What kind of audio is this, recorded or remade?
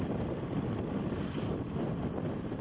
recorded